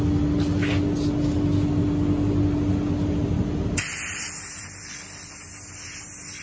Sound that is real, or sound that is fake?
real